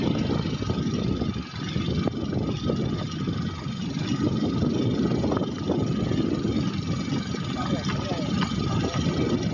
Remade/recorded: recorded